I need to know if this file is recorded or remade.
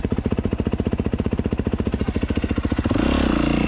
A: recorded